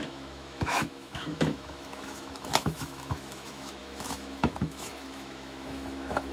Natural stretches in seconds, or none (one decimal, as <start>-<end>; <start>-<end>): none